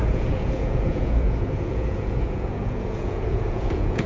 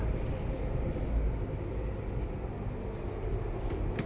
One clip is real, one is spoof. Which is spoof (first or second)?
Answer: first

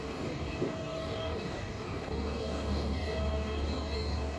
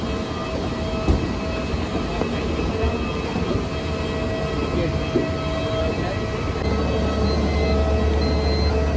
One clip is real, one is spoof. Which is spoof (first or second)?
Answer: first